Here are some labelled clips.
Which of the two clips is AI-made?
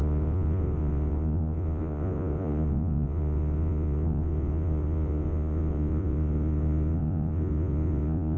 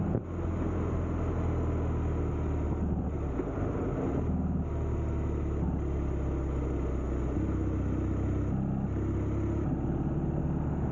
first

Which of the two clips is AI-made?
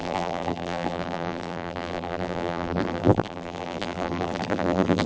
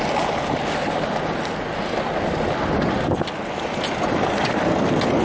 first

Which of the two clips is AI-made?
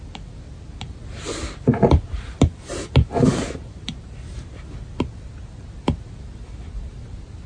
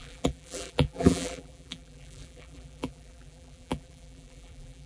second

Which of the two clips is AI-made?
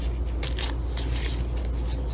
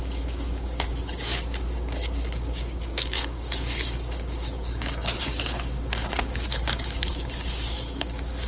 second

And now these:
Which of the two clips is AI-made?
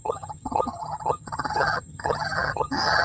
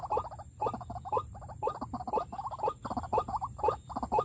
first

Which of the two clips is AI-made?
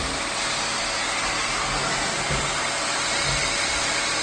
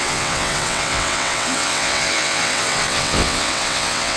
second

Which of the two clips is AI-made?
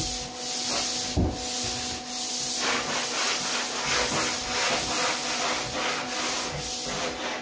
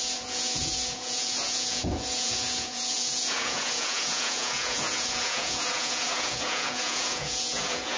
second